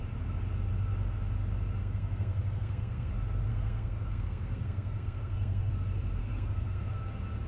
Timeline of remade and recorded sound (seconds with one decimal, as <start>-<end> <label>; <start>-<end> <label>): 0.0-1.8 recorded; 1.8-3.1 remade; 3.1-3.5 recorded; 3.5-5.7 remade; 5.7-6.2 recorded; 6.2-7.0 remade; 7.0-7.5 recorded